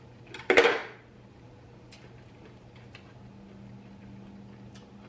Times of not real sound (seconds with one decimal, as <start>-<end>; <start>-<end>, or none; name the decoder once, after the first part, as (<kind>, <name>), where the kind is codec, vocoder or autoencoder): none